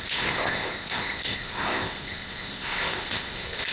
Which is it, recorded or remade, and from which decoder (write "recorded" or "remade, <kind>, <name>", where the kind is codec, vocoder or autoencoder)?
remade, codec, ZipCodec